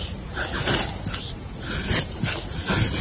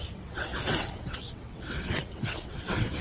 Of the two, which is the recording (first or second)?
first